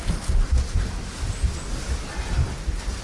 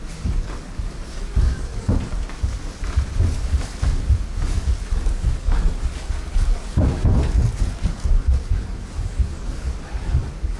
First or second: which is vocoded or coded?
second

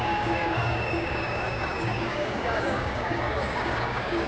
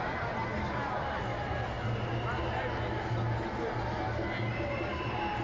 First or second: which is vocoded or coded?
first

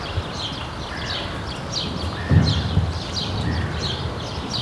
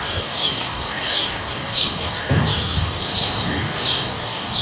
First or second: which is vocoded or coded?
second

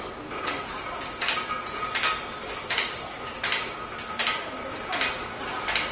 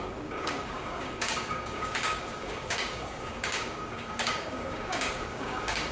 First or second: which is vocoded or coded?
second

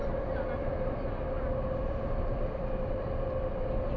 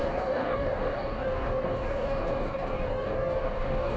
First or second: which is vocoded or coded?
second